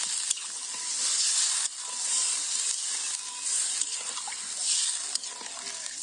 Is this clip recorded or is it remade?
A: recorded